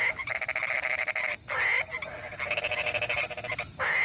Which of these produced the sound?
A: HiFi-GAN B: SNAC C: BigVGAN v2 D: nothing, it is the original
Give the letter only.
D